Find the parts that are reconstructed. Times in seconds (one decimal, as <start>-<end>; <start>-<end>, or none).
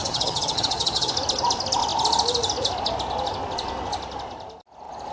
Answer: 0.0-1.1